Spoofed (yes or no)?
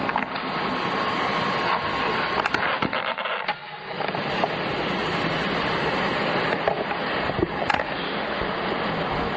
no